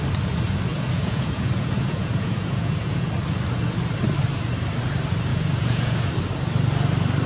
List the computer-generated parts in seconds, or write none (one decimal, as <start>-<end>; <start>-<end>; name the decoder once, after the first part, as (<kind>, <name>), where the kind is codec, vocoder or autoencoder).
0.7-3.1 (vocoder, Vocos); 5.3-6.1